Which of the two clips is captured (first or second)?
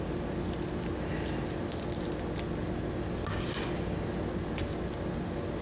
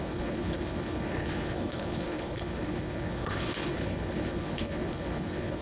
first